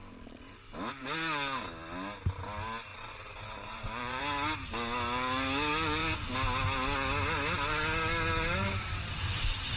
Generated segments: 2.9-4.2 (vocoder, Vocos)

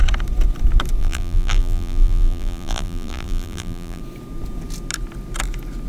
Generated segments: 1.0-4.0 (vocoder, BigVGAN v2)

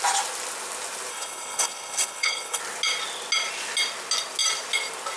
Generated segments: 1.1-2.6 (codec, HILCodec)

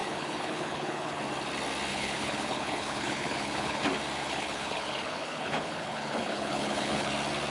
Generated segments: 0.0-1.2 (codec, HILCodec); 1.9-3.8; 4.2-7.1

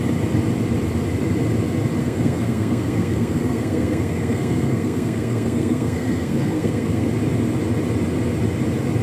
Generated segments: 2.0-7.1 (codec, SNAC)